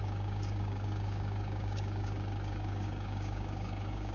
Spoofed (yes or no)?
yes